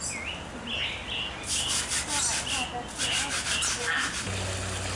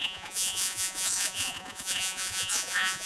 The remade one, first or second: second